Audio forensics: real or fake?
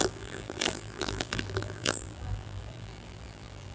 fake